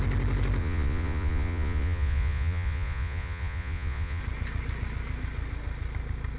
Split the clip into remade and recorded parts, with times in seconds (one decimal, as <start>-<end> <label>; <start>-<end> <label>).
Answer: 0.0-0.6 recorded; 0.6-4.2 remade; 4.2-6.4 recorded

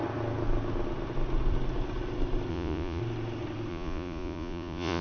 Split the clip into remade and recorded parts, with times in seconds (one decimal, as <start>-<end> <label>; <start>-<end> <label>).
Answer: 0.0-2.5 recorded; 2.5-3.0 remade; 3.0-3.7 recorded; 3.7-5.0 remade

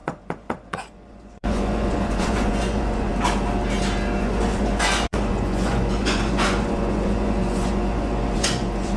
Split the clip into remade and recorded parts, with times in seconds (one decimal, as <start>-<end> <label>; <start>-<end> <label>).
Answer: 0.0-3.1 remade; 3.1-4.2 recorded; 4.2-9.0 remade

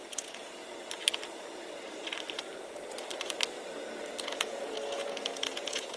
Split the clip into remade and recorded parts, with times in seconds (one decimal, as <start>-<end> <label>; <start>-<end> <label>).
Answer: 0.0-0.6 remade; 0.6-4.2 recorded; 4.2-6.0 remade

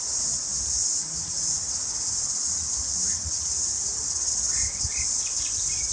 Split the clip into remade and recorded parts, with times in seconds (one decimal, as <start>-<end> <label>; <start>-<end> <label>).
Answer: 0.0-0.8 recorded; 0.8-4.3 remade; 4.3-5.9 recorded

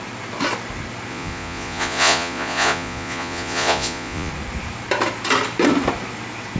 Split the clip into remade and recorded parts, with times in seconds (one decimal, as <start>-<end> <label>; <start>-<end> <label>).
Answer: 0.0-1.1 recorded; 1.1-4.3 remade; 4.3-6.6 recorded

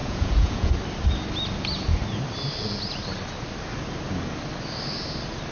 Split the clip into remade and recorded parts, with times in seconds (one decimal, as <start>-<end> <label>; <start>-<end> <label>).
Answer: 0.0-0.7 remade; 0.7-5.5 recorded